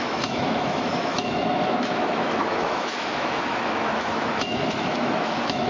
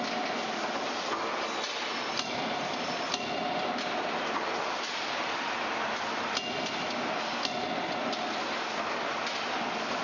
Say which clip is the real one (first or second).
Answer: second